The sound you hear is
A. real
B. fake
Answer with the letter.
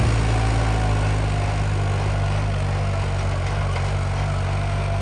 A